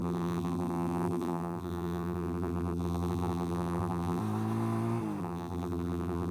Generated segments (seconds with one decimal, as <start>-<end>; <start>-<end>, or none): 0.0-4.2; 5.2-6.3